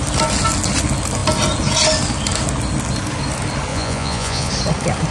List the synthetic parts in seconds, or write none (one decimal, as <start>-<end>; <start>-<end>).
3.7-4.5